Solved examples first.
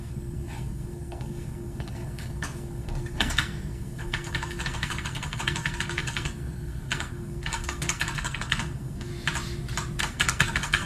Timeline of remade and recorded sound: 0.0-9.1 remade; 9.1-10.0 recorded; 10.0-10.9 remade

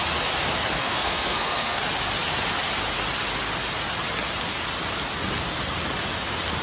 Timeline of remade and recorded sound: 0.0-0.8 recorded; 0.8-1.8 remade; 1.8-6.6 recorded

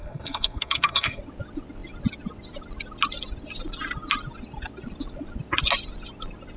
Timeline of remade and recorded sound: 0.0-1.2 remade; 1.2-6.6 recorded

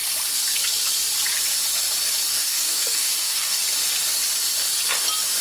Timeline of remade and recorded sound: 0.0-2.3 recorded; 2.3-3.6 remade; 3.6-5.4 recorded